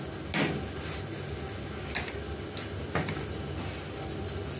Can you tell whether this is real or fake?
real